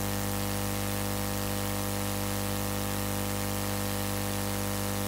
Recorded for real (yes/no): yes